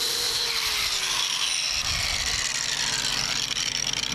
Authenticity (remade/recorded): recorded